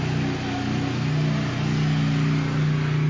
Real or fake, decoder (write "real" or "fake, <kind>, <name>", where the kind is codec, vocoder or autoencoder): real